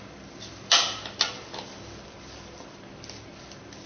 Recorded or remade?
recorded